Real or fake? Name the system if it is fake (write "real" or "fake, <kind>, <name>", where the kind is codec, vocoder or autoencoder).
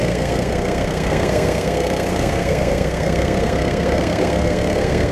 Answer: fake, codec, SNAC